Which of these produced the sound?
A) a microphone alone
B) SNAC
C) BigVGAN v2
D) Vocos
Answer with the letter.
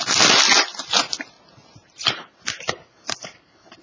C